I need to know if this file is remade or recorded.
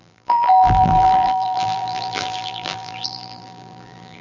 remade